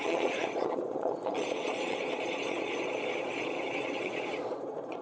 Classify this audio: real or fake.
fake